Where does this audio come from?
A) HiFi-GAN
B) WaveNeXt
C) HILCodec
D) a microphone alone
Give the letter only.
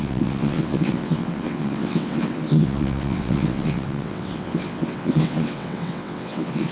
B